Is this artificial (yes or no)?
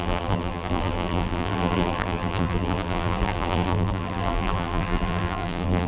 yes